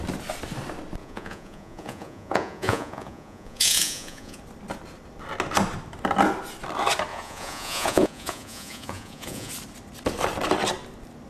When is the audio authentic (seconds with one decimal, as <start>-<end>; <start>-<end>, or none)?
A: 0.0-1.0; 4.4-7.1; 9.5-11.3